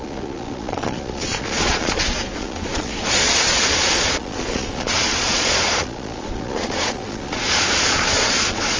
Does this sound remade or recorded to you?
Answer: remade